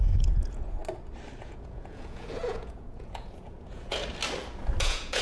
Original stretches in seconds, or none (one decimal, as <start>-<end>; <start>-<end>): 0.8-1.4; 4.0-4.8

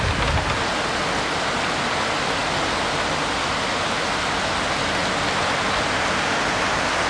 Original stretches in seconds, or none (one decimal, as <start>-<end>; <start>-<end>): 0.0-7.1

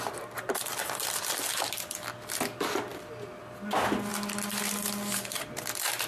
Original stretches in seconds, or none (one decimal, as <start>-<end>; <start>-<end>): 0.0-6.1

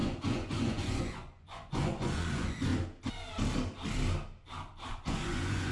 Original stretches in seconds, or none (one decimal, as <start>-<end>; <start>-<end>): 2.7-4.9

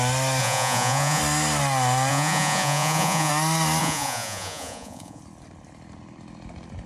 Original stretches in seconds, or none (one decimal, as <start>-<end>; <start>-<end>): 0.0-0.4; 1.2-2.1; 3.3-3.8; 5.2-6.9

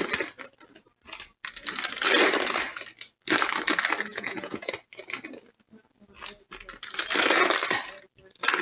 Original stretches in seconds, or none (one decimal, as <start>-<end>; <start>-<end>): 0.0-4.1; 4.7-8.6

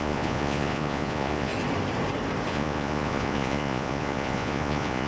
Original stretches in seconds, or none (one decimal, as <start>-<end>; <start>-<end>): 1.5-2.5